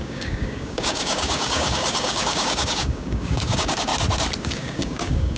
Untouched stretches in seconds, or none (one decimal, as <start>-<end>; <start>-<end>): 3.9-4.4